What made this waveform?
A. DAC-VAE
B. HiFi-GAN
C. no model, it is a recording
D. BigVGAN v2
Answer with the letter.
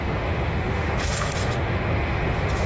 A